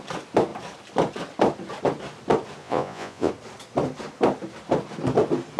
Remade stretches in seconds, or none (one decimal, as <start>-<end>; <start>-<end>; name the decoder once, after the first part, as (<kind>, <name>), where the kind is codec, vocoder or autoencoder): 2.6-3.3 (vocoder, Vocos)